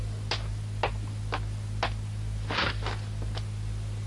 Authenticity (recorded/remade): recorded